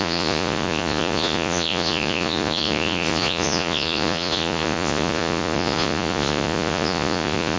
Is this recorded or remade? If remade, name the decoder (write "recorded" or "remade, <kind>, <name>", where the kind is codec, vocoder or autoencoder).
remade, vocoder, Vocos